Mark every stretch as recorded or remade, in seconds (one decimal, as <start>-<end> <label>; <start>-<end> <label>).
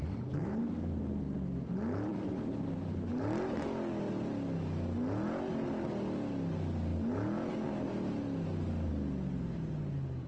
0.0-0.4 recorded; 0.4-1.2 remade; 1.2-2.1 recorded; 2.1-2.8 remade; 2.8-10.3 recorded